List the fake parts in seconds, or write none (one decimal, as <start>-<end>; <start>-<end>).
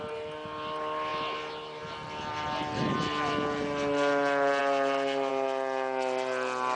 none